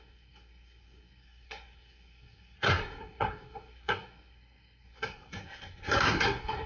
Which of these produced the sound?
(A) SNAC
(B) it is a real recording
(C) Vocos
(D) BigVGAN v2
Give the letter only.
A